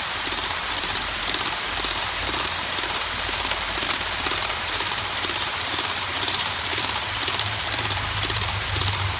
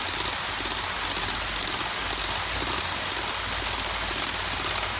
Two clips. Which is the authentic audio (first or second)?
second